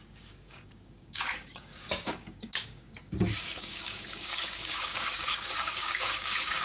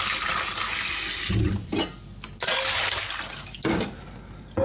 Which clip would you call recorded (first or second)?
second